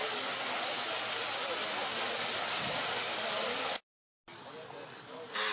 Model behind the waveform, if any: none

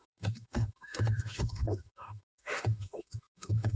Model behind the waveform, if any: autoencoder, DAC-VAE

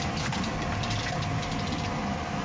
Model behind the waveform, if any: none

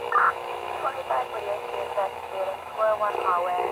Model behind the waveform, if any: autoencoder, DAC-VAE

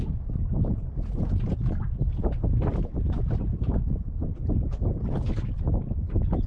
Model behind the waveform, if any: none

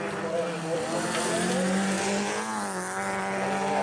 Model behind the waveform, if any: none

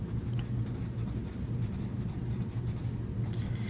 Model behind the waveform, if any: none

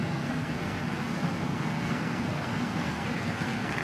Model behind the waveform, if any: codec, SNAC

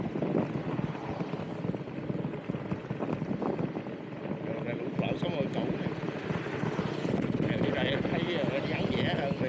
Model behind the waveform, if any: none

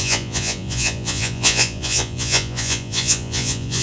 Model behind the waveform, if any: vocoder, Vocos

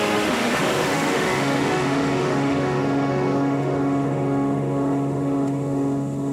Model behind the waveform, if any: autoencoder, DAC-VAE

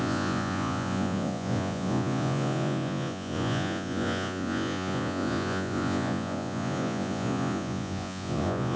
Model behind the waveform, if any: vocoder, Vocos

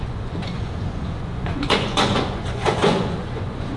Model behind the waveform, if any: vocoder, Vocos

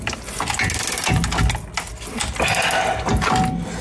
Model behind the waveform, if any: none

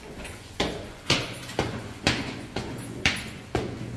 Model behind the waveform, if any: vocoder, Vocos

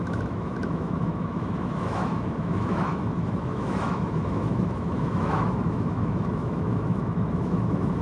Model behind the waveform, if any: autoencoder, DAC-VAE